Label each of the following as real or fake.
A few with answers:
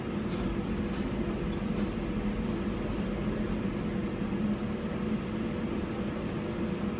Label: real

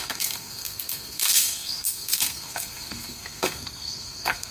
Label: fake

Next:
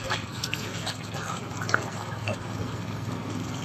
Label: fake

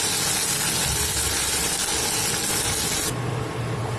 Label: real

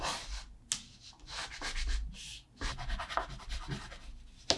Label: real